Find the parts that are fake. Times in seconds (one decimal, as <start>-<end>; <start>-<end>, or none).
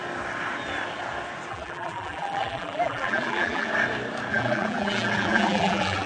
1.5-3.7; 4.3-6.1